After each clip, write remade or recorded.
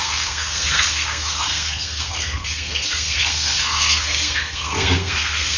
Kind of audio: remade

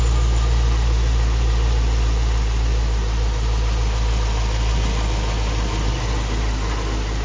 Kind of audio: recorded